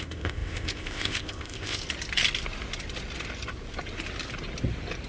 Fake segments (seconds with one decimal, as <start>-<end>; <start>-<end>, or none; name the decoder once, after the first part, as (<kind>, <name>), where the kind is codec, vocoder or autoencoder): 0.0-1.8 (codec, ZipCodec)